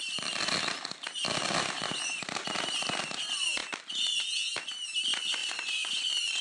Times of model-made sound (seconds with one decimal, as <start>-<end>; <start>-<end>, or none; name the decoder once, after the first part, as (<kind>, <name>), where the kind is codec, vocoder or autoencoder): 5.4-6.4 (vocoder, Vocos)